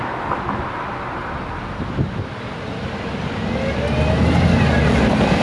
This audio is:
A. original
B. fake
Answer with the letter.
A